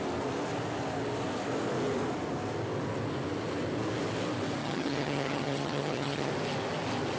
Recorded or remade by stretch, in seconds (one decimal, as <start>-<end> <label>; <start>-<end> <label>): 0.0-4.6 recorded; 4.6-6.3 remade; 6.3-7.2 recorded